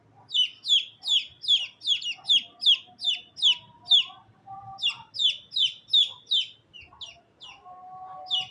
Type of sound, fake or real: real